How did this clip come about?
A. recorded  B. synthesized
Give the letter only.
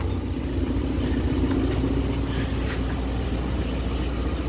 A